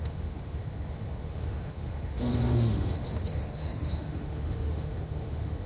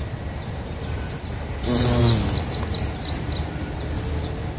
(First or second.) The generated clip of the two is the first